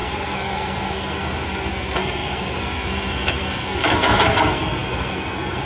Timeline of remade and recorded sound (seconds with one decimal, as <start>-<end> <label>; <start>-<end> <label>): 0.0-5.7 remade